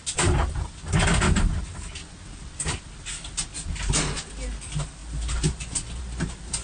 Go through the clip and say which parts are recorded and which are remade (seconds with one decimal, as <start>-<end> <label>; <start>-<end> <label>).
0.0-6.6 recorded